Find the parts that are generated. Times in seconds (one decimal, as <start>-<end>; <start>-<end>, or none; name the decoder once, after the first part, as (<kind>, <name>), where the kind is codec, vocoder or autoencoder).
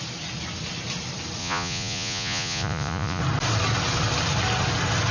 1.4-3.2 (vocoder, Vocos)